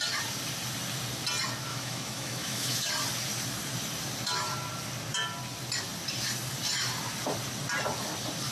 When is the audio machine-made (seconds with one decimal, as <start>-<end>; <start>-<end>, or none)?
1.7-2.9